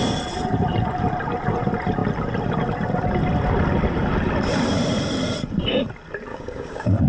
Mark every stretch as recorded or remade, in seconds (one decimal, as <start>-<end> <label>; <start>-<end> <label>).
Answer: 0.0-6.3 recorded; 6.3-7.1 remade